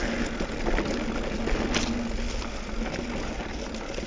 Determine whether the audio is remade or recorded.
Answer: recorded